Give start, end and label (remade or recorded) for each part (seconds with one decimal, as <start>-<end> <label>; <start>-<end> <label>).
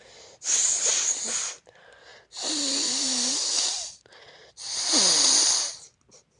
0.0-6.4 recorded